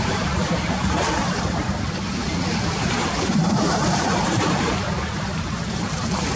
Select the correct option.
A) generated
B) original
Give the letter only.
A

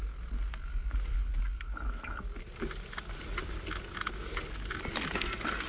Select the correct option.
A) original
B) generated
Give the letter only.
A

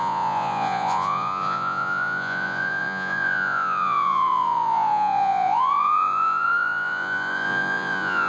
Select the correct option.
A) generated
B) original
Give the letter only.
A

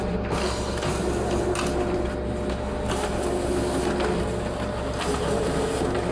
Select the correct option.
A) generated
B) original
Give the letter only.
B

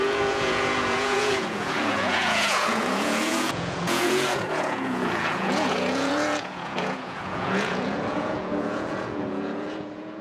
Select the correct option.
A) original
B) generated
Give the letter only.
B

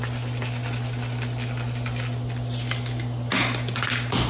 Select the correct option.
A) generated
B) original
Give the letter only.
B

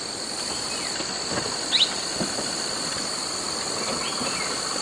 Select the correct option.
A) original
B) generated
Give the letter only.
A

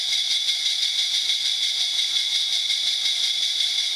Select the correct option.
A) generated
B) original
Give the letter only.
B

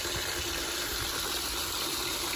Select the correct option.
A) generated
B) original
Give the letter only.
B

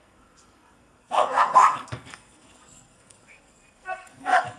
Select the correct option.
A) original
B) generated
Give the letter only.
B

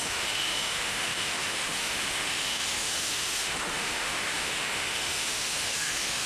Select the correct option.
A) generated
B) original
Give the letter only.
A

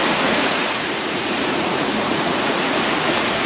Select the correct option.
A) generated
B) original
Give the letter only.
A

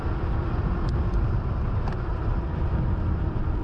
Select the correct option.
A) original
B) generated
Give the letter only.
A